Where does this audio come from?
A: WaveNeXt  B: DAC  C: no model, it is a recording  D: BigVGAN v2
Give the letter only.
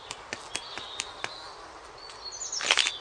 C